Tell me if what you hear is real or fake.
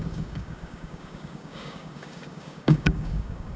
fake